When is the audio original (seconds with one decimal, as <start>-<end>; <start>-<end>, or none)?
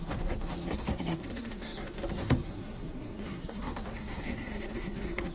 none